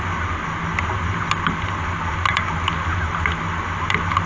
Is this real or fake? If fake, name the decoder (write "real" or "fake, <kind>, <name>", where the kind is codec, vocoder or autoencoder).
real